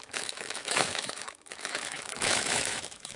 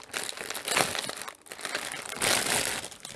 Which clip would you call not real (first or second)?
first